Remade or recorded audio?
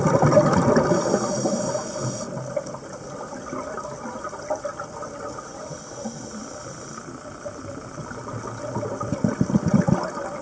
recorded